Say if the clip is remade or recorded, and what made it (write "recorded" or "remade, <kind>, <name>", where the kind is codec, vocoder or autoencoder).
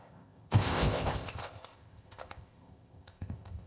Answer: remade, codec, ZipCodec